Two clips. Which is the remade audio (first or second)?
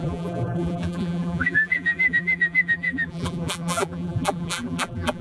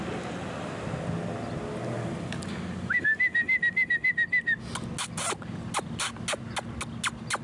first